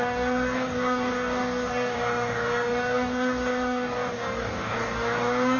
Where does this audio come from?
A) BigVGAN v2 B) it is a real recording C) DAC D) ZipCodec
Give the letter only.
C